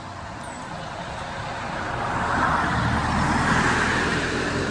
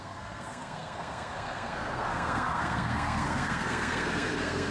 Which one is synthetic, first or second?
second